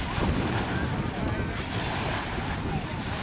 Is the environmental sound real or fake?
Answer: real